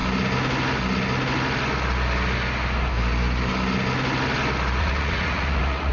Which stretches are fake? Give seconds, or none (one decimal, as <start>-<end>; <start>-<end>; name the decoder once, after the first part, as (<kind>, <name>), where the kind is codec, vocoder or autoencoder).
4.8-5.9 (vocoder, Vocos)